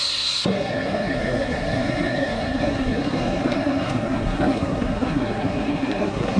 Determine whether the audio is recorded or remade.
remade